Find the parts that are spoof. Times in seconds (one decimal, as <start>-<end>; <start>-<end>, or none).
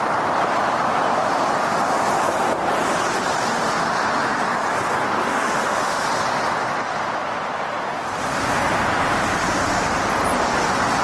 5.2-6.1